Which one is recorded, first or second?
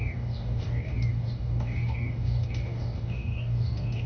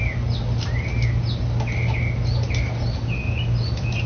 second